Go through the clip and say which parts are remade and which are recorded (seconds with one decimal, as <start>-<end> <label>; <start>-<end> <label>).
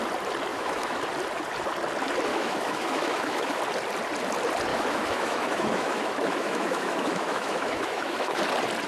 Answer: 0.0-0.5 recorded; 0.5-1.0 remade; 1.0-2.3 recorded; 2.3-3.6 remade; 3.6-4.7 recorded; 4.7-8.4 remade; 8.4-8.9 recorded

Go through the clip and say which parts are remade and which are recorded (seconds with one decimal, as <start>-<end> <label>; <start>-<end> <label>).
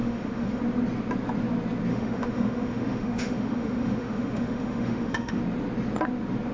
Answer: 0.0-0.6 remade; 0.6-1.9 recorded; 1.9-5.4 remade; 5.4-6.5 recorded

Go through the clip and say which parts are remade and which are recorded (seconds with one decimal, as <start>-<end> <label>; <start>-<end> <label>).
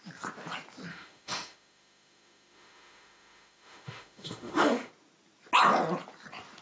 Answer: 0.0-0.9 recorded; 0.9-4.9 remade; 4.9-6.6 recorded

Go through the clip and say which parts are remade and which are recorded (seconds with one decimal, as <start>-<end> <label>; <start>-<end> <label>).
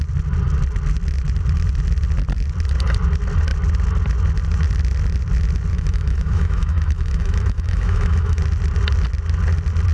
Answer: 0.0-5.7 recorded; 5.7-8.4 remade; 8.4-9.9 recorded